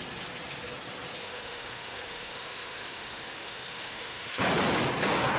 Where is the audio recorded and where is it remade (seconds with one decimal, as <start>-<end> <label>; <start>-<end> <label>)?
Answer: 0.0-1.2 recorded; 1.2-4.4 remade; 4.4-5.4 recorded